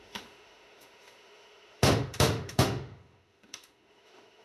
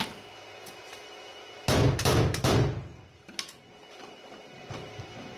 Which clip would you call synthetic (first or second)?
first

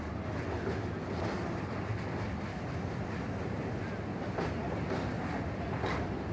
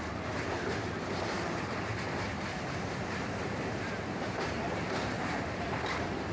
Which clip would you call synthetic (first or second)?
second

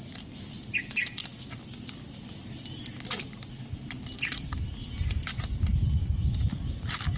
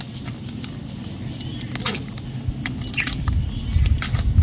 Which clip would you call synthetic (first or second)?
first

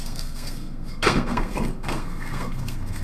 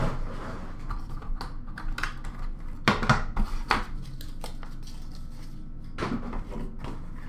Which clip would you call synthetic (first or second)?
first